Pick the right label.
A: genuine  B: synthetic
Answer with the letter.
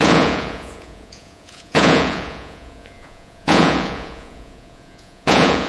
B